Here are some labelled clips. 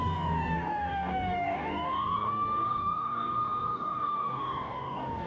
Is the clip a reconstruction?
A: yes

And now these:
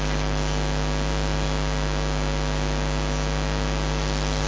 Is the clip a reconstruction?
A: no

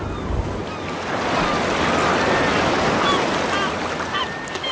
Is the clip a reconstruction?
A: no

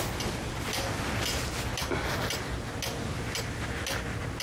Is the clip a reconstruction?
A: no